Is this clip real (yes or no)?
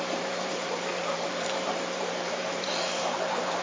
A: no